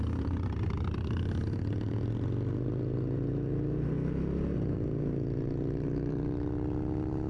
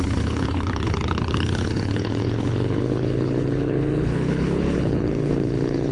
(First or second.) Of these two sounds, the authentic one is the first